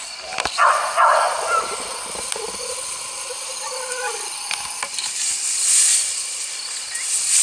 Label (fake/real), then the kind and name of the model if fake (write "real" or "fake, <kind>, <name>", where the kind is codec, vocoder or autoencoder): real